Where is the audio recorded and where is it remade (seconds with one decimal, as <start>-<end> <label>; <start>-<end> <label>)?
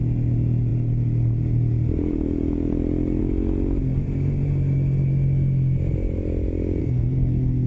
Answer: 0.0-6.8 recorded; 6.8-7.7 remade